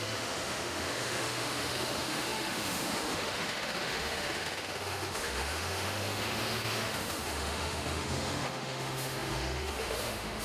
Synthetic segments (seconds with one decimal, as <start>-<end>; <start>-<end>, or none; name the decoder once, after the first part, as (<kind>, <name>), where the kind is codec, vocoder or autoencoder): 0.0-10.4 (autoencoder, DAC-VAE)